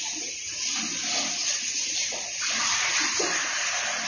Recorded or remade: recorded